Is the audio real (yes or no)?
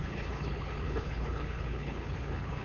no